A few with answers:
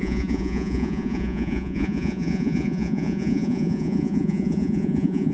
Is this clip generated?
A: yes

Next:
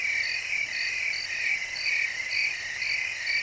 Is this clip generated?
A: no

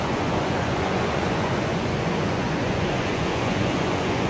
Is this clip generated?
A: yes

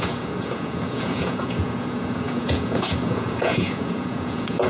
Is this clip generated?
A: yes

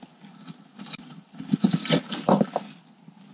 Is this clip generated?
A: no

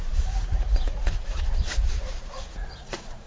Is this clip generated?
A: yes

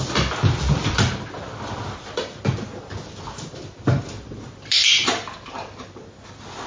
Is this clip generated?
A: no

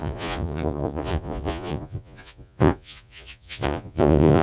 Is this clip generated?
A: yes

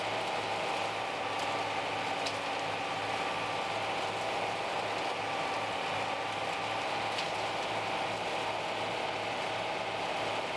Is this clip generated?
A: no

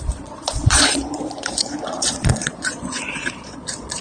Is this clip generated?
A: yes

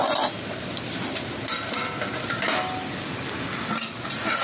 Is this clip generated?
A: no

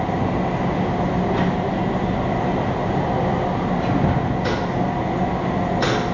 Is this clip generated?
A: no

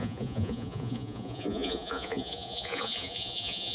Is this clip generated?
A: yes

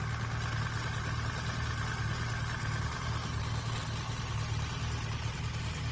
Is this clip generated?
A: no